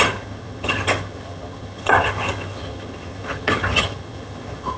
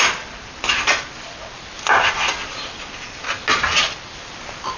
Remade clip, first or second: first